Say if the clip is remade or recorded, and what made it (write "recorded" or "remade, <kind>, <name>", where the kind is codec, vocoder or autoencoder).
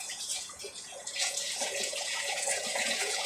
remade, vocoder, Vocos